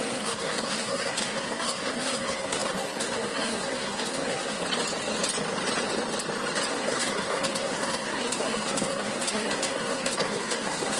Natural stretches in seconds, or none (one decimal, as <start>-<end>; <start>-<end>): 4.6-6.7